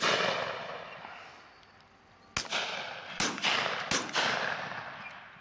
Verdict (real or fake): real